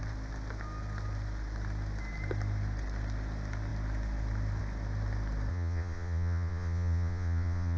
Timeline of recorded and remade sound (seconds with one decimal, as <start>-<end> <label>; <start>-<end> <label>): 0.0-5.5 recorded; 5.5-7.8 remade